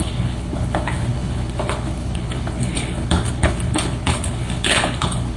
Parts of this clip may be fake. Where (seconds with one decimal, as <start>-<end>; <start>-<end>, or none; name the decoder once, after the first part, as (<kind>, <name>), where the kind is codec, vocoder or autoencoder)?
0.0-5.4 (codec, HILCodec)